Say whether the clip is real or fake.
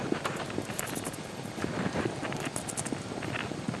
real